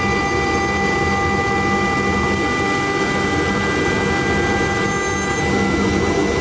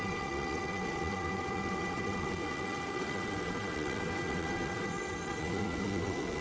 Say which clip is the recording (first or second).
first